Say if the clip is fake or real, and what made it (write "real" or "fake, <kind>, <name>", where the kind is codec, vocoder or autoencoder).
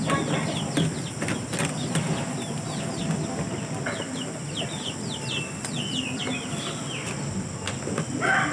real